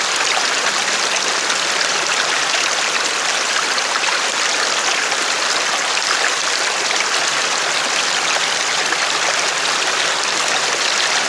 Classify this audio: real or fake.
real